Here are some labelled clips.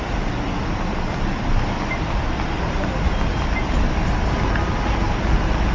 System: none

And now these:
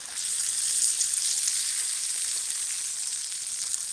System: none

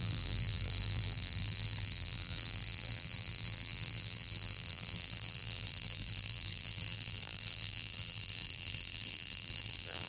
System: vocoder, BigVGAN v2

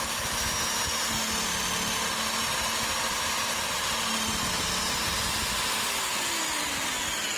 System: none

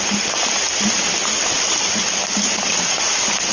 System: none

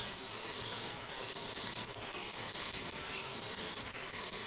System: codec, SNAC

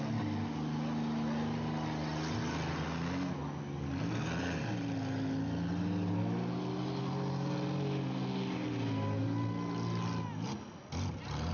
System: none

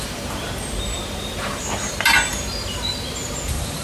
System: vocoder, BigVGAN v2